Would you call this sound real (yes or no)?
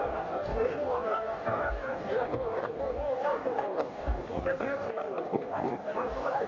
no